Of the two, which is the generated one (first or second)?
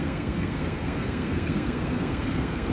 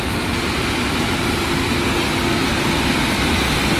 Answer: first